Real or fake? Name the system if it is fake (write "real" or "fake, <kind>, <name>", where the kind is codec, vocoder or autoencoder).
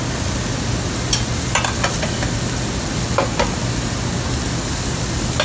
real